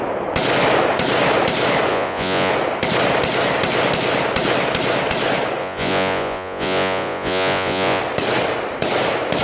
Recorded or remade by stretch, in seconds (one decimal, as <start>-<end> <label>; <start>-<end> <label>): 0.0-1.9 recorded; 1.9-2.5 remade; 2.5-5.6 recorded; 5.6-8.0 remade; 8.0-9.4 recorded